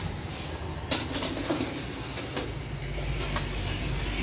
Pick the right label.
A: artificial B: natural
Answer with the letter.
B